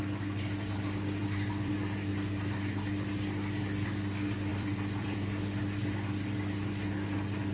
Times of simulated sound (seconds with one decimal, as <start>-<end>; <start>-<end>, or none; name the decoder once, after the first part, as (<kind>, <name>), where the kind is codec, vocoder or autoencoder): 1.2-1.7 (vocoder, BigVGAN v2); 4.5-5.8